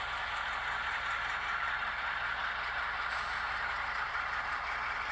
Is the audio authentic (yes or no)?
yes